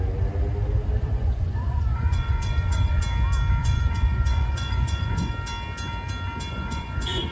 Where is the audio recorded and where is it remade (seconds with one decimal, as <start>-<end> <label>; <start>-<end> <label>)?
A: 0.0-1.1 recorded; 1.1-3.0 remade; 3.0-3.6 recorded; 3.6-5.3 remade; 5.3-6.5 recorded; 6.5-7.3 remade